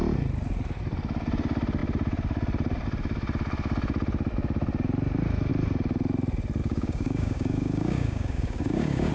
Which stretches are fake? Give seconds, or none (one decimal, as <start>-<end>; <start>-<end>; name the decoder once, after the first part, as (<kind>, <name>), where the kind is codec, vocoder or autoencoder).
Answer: 6.6-9.1 (codec, DAC)